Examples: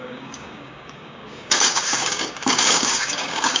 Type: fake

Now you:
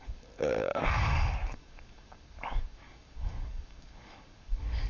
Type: fake